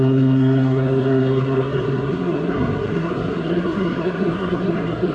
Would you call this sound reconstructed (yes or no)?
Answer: yes